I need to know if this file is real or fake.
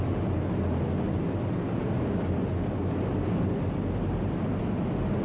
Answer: real